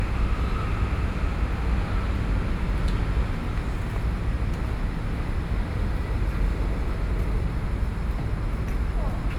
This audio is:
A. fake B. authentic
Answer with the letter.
B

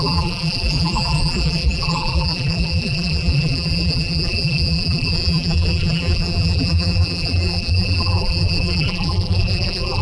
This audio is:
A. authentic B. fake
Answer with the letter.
B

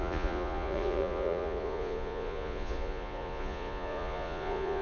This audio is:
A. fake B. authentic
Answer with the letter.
A